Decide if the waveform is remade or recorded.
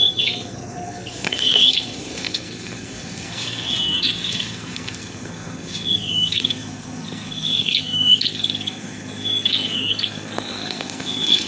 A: remade